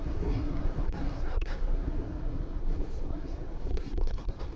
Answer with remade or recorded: remade